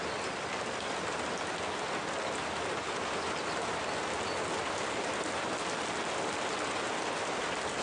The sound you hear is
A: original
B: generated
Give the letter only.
A